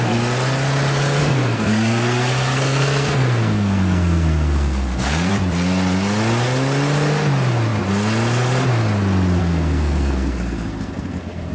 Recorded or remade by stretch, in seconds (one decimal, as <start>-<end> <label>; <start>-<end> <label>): 0.0-1.2 recorded; 1.2-5.3 remade; 5.3-9.4 recorded; 9.4-11.5 remade